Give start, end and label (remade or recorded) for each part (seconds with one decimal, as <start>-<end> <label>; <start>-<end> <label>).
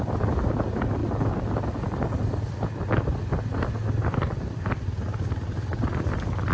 0.0-6.5 recorded